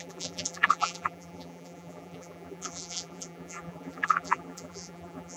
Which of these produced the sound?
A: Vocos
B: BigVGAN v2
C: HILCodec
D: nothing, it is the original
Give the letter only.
B